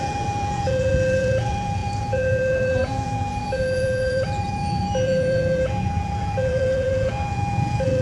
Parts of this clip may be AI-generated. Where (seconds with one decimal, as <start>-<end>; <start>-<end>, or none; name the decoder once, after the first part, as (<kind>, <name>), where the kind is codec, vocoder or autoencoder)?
0.0-8.0 (vocoder, Vocos)